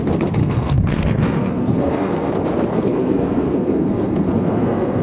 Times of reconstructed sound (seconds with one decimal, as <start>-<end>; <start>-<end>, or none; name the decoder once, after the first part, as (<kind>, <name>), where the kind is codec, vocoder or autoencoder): 0.4-2.3 (codec, SNAC); 2.7-5.0